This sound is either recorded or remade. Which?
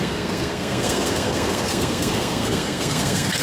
remade